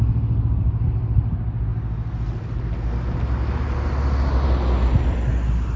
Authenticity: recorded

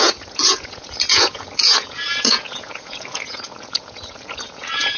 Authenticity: remade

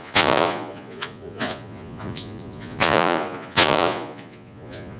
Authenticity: remade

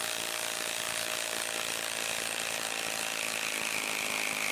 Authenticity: recorded